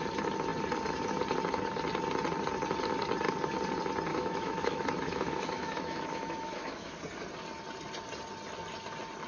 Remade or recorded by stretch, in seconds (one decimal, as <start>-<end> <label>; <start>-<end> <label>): 0.0-4.1 recorded; 4.1-7.0 remade; 7.0-9.3 recorded